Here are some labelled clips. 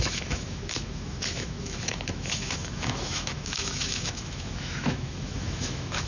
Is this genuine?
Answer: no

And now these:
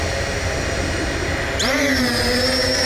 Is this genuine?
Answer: yes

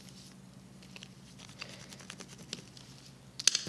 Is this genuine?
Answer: yes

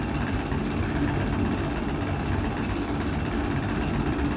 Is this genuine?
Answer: yes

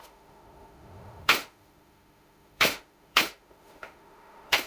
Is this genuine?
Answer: no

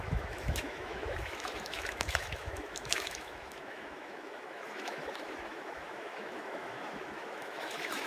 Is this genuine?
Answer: no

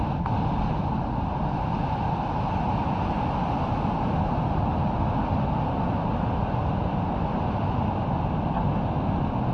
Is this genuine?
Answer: yes